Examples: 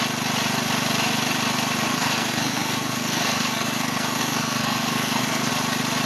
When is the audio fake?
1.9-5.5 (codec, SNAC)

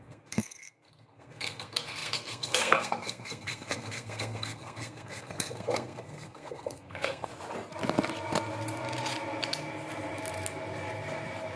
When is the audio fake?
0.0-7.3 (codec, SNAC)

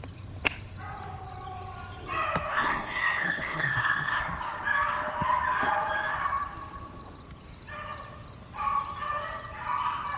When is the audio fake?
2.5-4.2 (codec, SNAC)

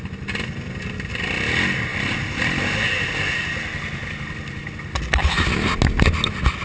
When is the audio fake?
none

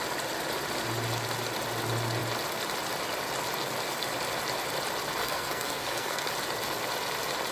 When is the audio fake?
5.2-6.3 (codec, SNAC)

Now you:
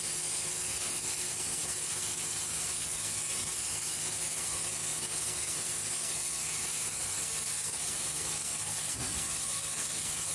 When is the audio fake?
0.0-10.3 (codec, SNAC)

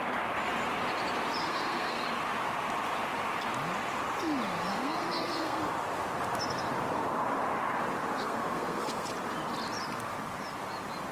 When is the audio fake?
1.4-2.0 (codec, SNAC); 4.7-5.6; 8.1-9.1

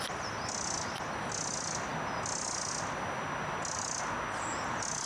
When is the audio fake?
none